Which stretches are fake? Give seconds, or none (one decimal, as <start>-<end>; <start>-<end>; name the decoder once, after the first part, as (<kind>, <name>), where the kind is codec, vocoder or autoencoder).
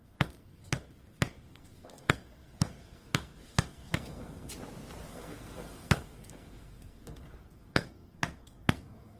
0.0-4.5 (codec, SNAC); 5.1-9.2